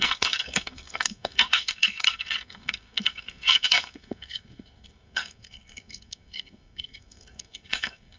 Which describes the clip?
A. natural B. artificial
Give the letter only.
B